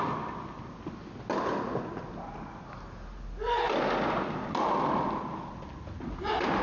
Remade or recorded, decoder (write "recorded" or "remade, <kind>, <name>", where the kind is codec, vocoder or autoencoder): recorded